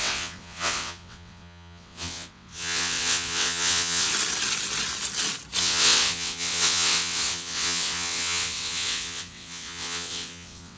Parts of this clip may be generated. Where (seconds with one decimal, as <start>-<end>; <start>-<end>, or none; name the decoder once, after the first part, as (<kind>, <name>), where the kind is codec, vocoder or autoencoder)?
0.0-4.1 (vocoder, WaveNeXt); 5.6-10.8